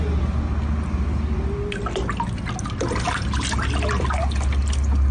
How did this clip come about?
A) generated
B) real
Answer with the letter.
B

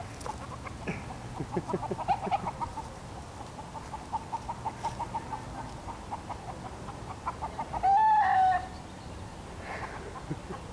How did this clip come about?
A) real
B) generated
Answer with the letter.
A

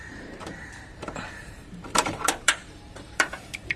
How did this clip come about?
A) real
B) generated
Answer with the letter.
B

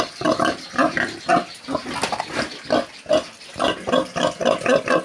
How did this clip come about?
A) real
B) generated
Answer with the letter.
A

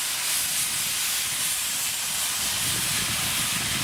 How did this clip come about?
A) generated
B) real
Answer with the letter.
B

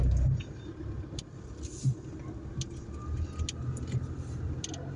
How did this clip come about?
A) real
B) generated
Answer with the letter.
A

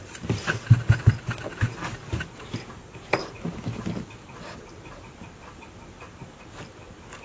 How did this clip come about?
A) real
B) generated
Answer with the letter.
A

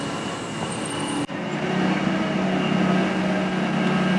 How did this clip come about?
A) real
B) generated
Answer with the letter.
A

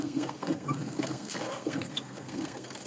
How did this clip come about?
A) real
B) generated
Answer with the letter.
B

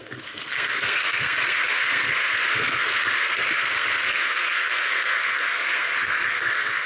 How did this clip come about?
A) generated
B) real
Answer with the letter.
A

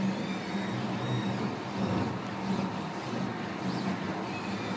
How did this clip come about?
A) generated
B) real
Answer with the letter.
B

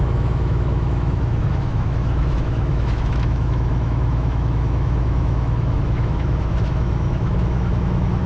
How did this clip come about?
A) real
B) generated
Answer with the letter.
B